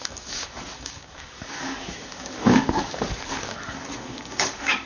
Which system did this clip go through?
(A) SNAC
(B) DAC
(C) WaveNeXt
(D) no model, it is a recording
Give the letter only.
B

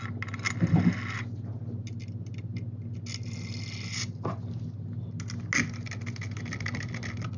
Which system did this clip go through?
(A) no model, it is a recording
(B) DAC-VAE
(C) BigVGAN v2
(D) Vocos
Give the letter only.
A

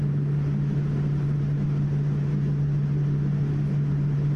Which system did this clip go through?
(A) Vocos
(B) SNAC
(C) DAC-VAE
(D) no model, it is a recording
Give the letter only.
D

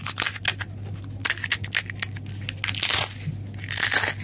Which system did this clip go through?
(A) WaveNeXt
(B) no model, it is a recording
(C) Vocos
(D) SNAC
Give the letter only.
B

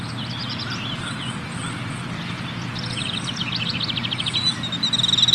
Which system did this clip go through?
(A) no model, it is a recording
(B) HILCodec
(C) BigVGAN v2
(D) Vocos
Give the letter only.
A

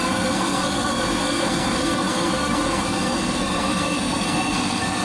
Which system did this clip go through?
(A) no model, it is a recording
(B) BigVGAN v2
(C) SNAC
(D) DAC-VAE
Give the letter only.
C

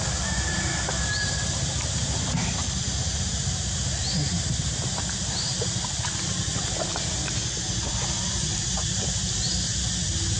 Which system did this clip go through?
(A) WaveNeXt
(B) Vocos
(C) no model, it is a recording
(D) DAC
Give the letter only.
C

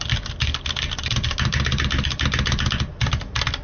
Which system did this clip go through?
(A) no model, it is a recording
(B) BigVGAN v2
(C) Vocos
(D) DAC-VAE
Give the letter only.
A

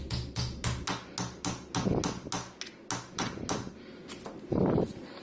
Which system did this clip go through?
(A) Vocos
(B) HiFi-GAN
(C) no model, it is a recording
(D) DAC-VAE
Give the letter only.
C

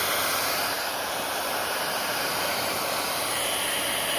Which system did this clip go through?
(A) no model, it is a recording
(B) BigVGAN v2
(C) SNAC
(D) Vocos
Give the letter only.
B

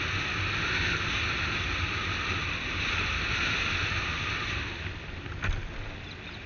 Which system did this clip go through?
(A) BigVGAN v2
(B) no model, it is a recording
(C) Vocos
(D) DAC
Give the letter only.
B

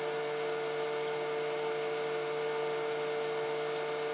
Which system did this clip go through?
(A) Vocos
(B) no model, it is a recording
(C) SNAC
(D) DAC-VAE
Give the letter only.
B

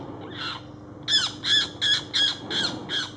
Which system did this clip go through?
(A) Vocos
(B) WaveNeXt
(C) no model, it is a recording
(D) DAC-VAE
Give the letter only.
C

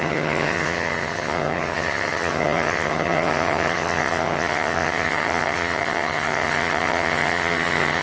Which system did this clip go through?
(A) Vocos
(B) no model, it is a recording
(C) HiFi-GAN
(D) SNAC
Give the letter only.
C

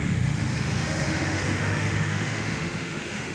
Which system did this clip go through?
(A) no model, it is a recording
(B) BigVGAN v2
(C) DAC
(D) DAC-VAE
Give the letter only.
D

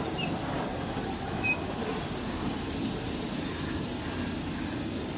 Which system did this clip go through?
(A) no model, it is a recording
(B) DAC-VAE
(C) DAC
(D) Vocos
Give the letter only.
A